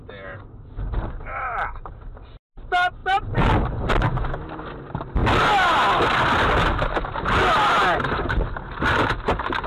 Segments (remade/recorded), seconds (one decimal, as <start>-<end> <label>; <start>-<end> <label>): 0.0-3.0 recorded; 3.0-3.9 remade; 3.9-9.7 recorded